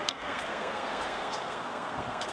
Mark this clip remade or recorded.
remade